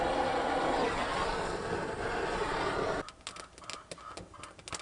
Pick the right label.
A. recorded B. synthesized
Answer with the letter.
A